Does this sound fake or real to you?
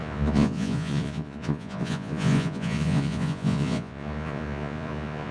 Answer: fake